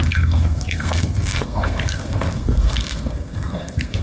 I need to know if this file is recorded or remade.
remade